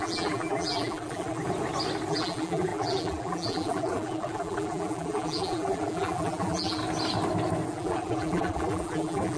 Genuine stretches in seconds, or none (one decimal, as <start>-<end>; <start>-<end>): 1.4-2.1; 6.8-7.7